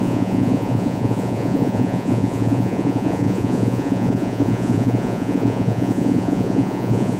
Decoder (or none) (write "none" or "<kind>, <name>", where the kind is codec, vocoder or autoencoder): vocoder, Vocos